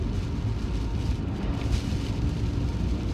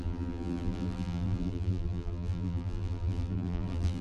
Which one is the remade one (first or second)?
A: second